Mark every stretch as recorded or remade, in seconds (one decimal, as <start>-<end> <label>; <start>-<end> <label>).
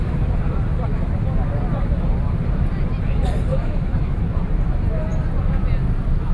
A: 0.0-3.5 recorded; 3.5-4.2 remade; 4.2-6.3 recorded